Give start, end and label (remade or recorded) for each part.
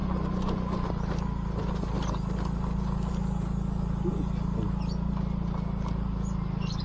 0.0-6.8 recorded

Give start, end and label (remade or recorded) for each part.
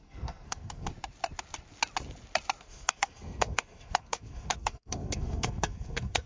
0.0-0.9 remade; 0.9-2.6 recorded; 2.6-6.3 remade